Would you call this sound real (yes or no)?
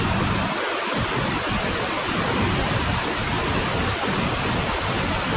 yes